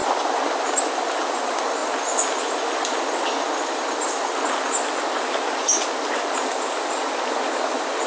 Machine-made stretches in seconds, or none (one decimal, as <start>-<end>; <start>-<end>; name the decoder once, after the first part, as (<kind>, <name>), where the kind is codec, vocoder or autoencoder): none